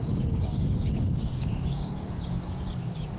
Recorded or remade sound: remade